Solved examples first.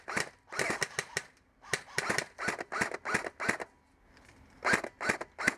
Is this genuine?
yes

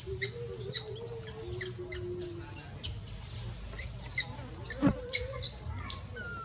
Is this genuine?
yes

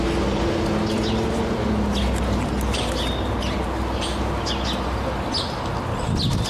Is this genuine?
yes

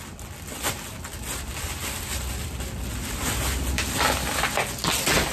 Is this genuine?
yes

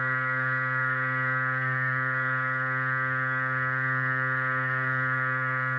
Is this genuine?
no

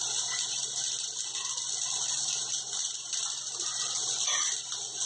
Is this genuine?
yes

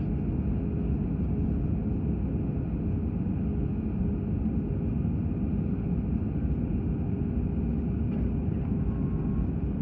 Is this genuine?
yes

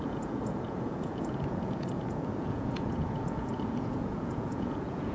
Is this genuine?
no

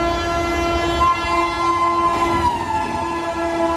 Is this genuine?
yes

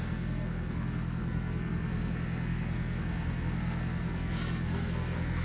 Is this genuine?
no